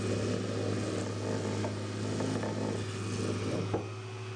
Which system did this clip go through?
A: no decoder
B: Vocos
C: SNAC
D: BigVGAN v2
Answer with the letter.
A